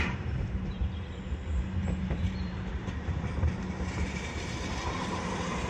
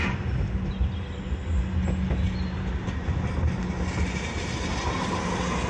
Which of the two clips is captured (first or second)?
second